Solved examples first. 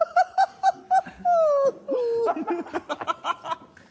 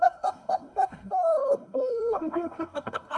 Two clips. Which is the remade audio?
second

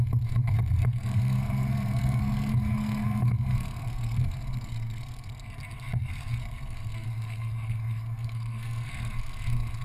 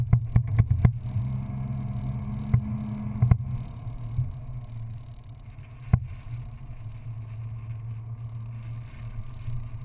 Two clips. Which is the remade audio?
first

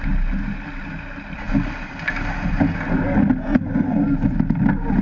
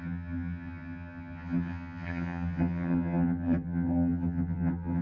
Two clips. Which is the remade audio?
second